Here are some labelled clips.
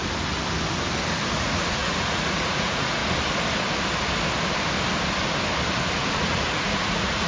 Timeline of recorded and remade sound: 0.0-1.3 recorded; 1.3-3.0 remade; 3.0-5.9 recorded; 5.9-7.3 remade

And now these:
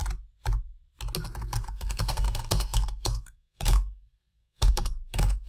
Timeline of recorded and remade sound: 0.0-1.4 recorded; 1.4-5.5 remade

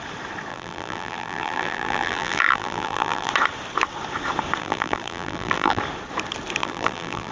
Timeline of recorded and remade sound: 0.0-0.5 recorded; 0.5-3.3 remade; 3.3-4.6 recorded; 4.6-5.8 remade; 5.8-6.6 recorded; 6.6-7.3 remade

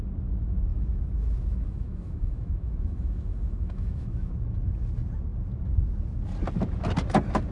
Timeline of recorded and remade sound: 0.0-0.7 recorded; 0.7-4.3 remade; 4.3-7.5 recorded

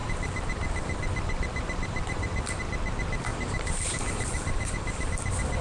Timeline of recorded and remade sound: 0.0-2.6 remade; 2.6-3.3 recorded; 3.3-5.1 remade; 5.1-5.6 recorded

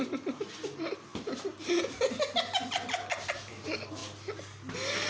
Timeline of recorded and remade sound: 0.0-5.1 recorded